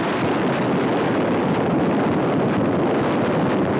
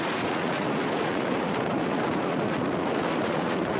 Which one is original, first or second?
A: first